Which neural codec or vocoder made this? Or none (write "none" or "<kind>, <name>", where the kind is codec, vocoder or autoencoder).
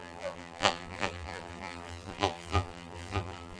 vocoder, BigVGAN v2